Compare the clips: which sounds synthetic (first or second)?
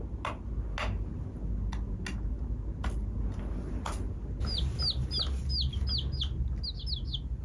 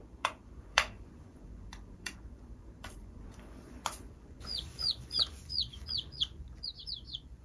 second